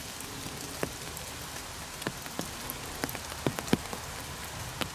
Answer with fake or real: real